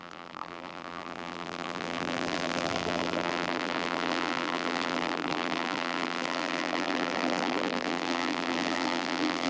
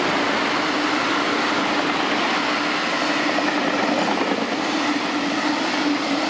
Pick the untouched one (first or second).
second